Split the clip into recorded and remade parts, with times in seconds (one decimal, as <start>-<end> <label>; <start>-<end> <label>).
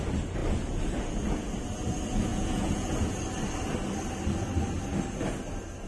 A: 0.0-2.3 recorded; 2.3-3.2 remade; 3.2-5.9 recorded